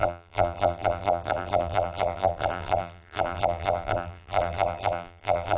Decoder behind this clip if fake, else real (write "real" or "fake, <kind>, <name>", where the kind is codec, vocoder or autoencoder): fake, vocoder, BigVGAN v2